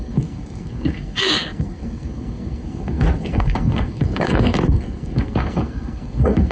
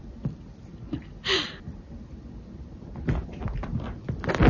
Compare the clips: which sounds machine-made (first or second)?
first